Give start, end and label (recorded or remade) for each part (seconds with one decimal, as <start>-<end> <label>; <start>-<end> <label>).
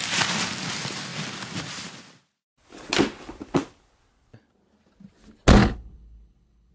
0.0-5.6 recorded; 5.6-6.7 remade